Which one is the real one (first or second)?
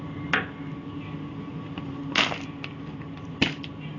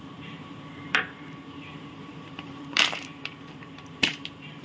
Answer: first